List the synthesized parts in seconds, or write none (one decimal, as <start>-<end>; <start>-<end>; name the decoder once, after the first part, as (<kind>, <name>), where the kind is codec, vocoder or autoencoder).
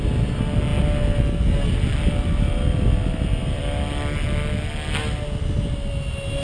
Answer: none